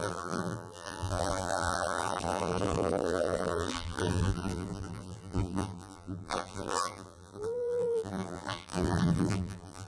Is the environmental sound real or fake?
fake